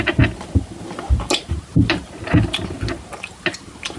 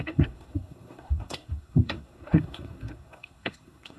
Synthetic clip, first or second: second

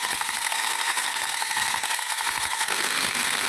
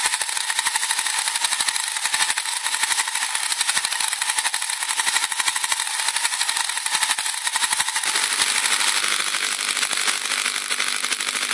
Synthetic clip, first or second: first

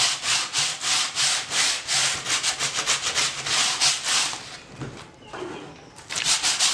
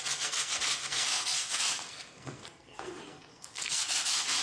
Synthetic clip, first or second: second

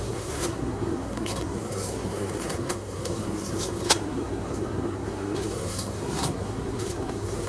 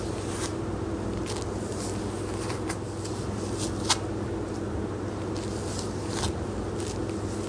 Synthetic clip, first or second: first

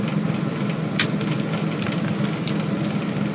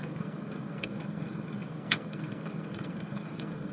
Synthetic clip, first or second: second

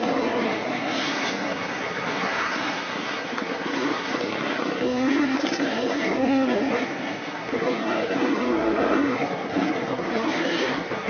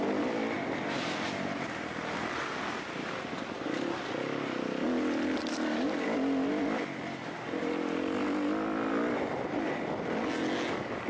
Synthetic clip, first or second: first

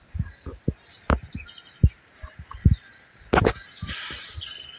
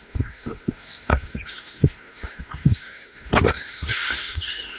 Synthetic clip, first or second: second